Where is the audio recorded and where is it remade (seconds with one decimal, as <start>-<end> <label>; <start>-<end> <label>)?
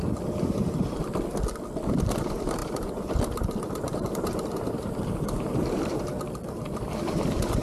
0.0-2.6 recorded; 2.6-6.0 remade; 6.0-7.6 recorded